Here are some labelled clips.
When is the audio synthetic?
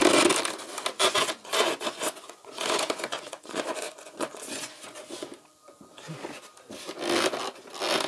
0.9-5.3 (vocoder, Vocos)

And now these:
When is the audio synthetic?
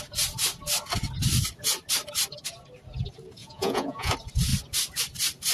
3.4-4.1 (vocoder, Vocos)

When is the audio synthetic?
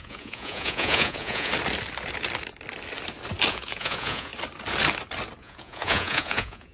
0.0-1.5 (vocoder, Vocos); 3.5-4.3; 5.4-6.7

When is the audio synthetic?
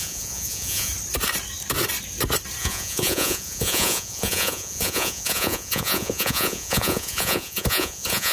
0.0-0.9 (vocoder, Vocos); 2.6-8.3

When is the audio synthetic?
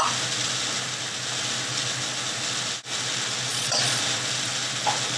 3.5-4.0 (vocoder, Vocos)